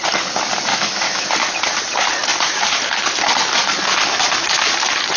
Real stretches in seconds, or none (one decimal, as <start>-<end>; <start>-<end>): 0.0-0.7; 1.3-5.2